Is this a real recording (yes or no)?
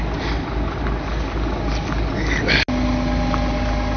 yes